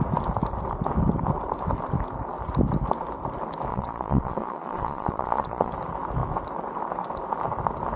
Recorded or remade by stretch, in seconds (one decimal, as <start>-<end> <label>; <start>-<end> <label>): 0.0-3.7 recorded; 3.7-5.7 remade; 5.7-8.0 recorded